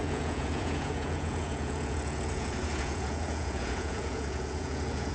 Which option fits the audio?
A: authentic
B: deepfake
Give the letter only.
B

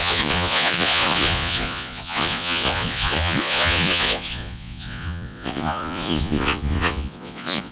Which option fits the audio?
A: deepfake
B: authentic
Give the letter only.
A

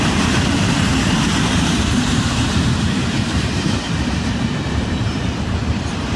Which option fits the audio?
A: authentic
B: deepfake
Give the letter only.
B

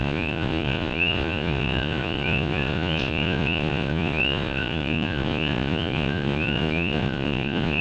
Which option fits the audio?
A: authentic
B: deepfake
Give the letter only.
B